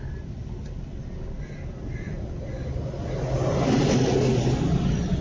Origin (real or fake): real